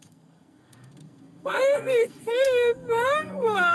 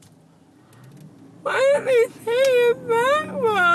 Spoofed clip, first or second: first